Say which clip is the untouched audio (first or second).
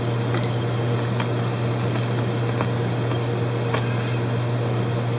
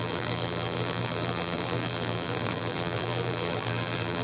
first